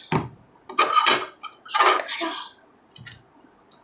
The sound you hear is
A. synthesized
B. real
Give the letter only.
B